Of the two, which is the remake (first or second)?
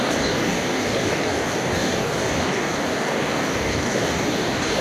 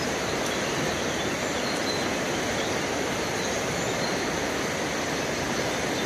first